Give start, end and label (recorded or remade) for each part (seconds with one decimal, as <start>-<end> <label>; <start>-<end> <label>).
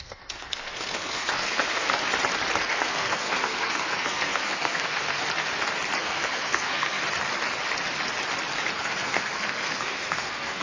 0.0-1.9 remade; 1.9-2.6 recorded; 2.6-5.2 remade; 5.2-6.0 recorded; 6.0-7.0 remade; 7.0-8.8 recorded; 8.8-10.6 remade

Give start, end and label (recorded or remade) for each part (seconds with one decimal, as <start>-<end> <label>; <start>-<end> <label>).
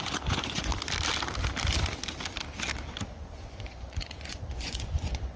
0.0-0.7 remade; 0.7-3.1 recorded; 3.1-5.4 remade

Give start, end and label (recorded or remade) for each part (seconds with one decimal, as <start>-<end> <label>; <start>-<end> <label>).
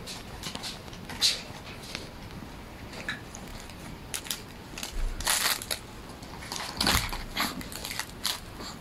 0.0-3.5 recorded; 3.5-4.2 remade; 4.2-7.8 recorded; 7.8-8.4 remade; 8.4-8.8 recorded